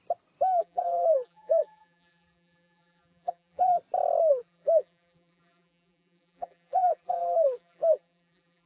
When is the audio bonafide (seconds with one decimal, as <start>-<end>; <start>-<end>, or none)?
0.0-0.6; 3.8-4.3